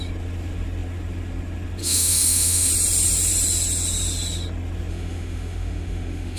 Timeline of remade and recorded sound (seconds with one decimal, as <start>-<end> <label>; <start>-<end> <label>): 0.0-1.8 recorded; 1.8-2.7 remade; 2.7-4.9 recorded; 4.9-6.4 remade

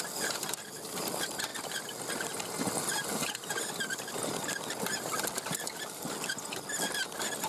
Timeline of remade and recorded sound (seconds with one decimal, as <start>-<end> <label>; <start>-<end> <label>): 0.0-7.5 recorded

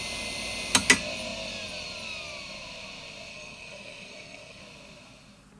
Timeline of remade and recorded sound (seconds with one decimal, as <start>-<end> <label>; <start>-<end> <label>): 0.0-3.3 recorded; 3.3-4.6 remade; 4.6-5.6 recorded

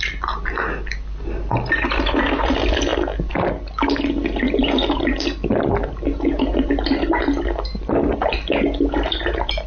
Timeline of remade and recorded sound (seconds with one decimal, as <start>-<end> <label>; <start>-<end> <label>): 0.0-9.7 recorded